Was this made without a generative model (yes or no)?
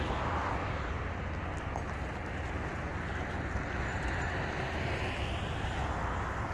yes